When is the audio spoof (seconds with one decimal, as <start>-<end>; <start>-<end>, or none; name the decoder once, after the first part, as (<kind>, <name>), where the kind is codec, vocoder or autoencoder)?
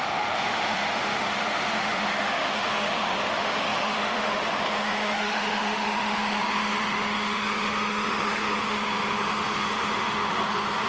0.0-10.9 (autoencoder, DAC-VAE)